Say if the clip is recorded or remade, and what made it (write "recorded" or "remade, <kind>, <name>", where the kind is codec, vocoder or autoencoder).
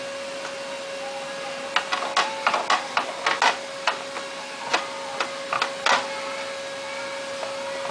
recorded